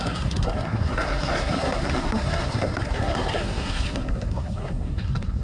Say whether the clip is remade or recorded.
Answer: remade